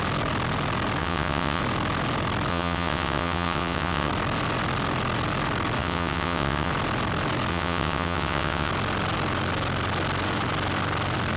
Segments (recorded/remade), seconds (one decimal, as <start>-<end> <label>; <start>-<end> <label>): 0.0-1.0 recorded; 1.0-1.6 remade; 1.6-2.5 recorded; 2.5-4.1 remade; 4.1-5.8 recorded; 5.8-6.7 remade; 6.7-7.5 recorded; 7.5-8.7 remade; 8.7-11.4 recorded